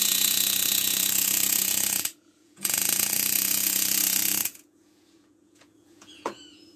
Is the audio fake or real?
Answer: fake